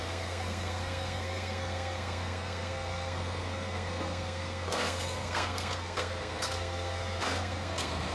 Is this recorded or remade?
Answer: remade